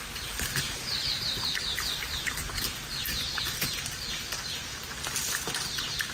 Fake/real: real